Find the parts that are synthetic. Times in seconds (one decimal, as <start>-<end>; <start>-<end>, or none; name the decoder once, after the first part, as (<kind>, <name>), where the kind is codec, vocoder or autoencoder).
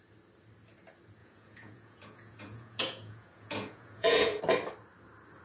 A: 1.2-4.4 (vocoder, Vocos)